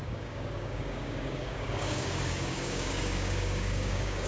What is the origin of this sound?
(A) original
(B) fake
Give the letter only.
B